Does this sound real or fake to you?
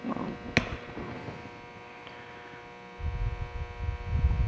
real